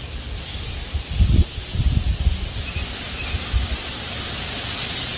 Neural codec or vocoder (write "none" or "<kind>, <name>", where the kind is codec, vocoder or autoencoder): none